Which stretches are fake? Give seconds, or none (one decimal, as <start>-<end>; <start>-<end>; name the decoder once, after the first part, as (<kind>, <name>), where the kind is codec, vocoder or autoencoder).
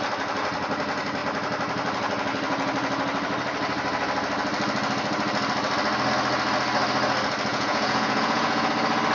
7.5-8.7 (vocoder, Vocos)